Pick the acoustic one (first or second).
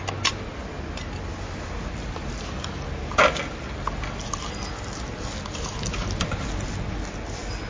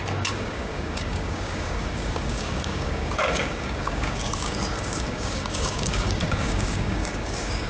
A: first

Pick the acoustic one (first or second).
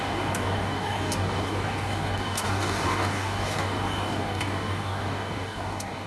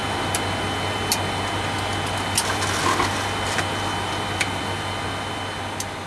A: second